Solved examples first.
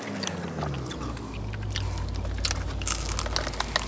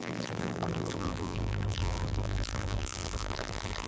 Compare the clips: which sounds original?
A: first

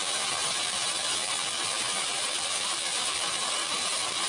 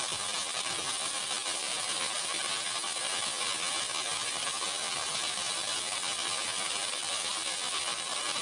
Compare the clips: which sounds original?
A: second